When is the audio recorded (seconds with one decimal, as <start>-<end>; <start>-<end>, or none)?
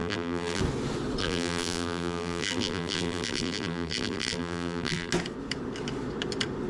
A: 0.6-1.2; 5.1-6.7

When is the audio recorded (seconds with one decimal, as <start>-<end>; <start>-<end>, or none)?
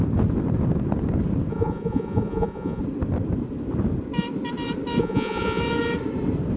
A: 0.0-1.5; 2.8-5.0; 5.6-6.6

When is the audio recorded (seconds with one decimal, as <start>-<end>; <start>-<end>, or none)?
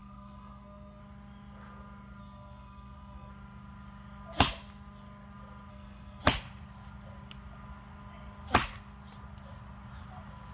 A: 1.0-2.2; 3.3-5.7; 6.2-10.5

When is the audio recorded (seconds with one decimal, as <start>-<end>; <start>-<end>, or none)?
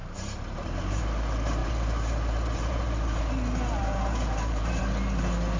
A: 1.0-1.6; 3.2-3.8; 4.8-5.6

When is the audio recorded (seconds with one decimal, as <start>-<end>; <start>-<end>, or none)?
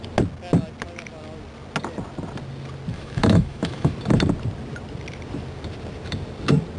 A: 0.0-2.9; 3.9-6.8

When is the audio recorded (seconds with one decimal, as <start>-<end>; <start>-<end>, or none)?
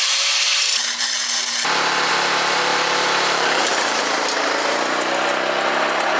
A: 0.0-2.7; 4.0-6.2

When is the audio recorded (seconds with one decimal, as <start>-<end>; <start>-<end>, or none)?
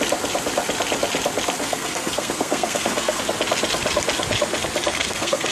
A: 0.0-1.6; 3.2-4.9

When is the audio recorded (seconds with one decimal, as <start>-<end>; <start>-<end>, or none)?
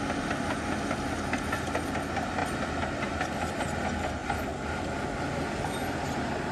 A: 0.0-6.5